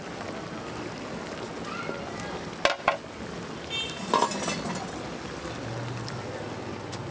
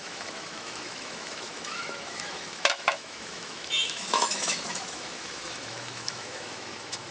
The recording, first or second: first